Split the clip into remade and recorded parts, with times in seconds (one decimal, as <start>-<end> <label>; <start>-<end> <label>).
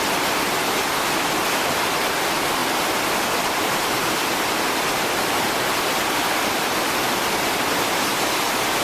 0.0-2.6 recorded; 2.6-7.6 remade; 7.6-8.8 recorded